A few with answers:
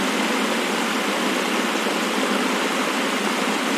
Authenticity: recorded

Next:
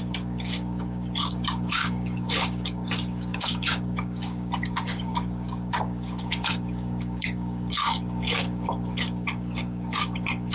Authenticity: remade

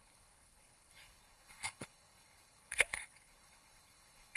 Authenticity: remade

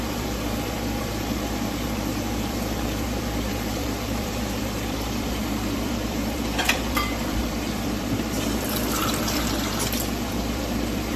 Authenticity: remade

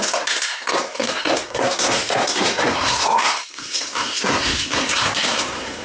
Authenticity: remade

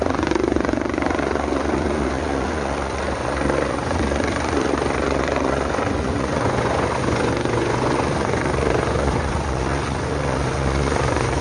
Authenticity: remade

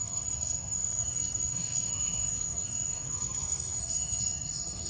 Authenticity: remade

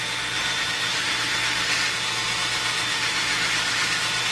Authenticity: recorded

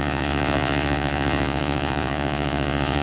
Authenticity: remade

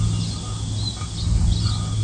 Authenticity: recorded